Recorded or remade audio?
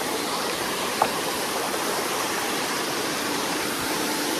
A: remade